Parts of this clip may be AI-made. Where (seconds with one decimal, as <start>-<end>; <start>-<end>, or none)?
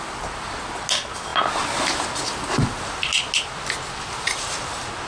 none